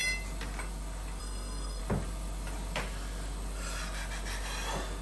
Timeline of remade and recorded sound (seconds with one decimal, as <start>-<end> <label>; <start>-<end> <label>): 0.0-1.2 recorded; 1.2-1.8 remade; 1.8-5.0 recorded